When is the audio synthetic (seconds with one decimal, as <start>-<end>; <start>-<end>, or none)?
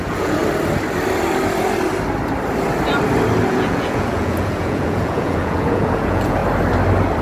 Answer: 0.0-0.4; 3.5-6.4